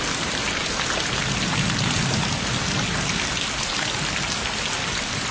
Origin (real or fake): real